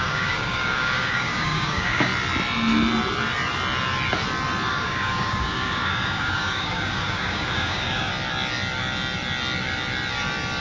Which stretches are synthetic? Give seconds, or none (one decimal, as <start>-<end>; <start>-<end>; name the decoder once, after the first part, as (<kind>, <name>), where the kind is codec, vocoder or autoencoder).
0.0-2.1 (codec, DAC); 4.7-8.1